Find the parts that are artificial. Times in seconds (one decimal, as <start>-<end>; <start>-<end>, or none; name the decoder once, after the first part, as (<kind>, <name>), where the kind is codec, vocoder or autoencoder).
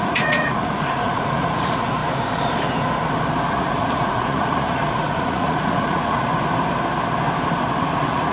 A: 0.0-2.0 (vocoder, Vocos); 3.5-6.3; 7.8-8.3